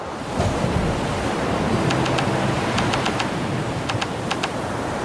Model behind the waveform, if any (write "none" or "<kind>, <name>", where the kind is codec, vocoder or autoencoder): none